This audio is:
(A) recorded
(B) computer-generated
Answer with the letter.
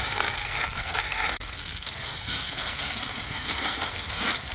B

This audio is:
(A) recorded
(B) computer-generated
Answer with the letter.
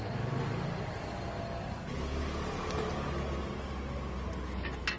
A